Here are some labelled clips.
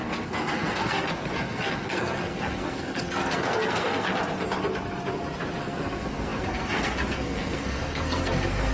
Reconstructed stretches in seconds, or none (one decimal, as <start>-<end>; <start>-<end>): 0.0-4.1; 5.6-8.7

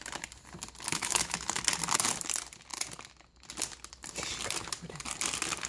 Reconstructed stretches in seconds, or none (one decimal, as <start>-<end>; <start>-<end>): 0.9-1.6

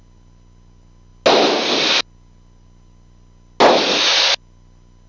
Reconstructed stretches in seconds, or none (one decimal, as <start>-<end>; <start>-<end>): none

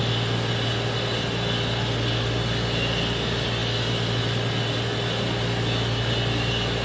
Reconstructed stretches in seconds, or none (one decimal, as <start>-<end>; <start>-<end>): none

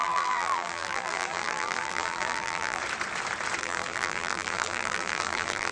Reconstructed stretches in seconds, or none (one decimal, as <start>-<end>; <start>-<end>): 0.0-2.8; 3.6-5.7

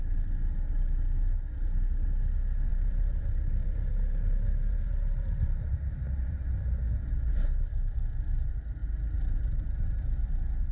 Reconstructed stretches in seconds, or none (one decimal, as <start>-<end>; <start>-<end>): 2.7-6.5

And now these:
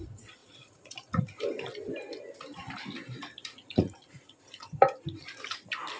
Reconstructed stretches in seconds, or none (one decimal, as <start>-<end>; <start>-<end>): 0.4-1.2; 3.5-4.8

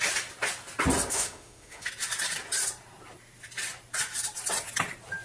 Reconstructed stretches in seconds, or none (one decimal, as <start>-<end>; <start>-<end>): 1.1-1.9